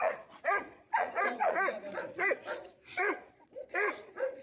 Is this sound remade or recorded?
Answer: remade